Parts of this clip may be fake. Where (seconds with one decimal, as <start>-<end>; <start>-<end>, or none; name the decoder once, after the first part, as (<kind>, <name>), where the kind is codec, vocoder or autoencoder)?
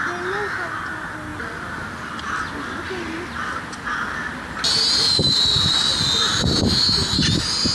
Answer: none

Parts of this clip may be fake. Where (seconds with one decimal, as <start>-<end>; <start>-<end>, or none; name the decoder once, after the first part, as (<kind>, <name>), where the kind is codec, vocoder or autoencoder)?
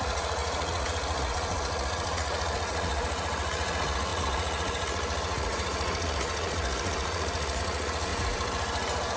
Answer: 0.0-8.1 (vocoder, Vocos)